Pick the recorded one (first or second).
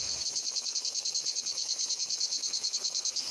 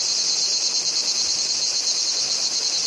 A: second